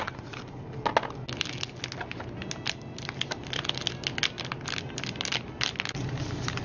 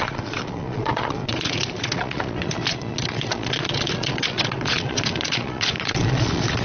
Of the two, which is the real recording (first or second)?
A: first